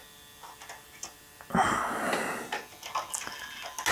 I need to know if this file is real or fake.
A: real